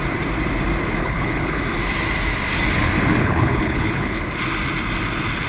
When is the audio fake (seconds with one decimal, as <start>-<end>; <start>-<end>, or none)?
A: 1.0-1.6; 3.2-4.2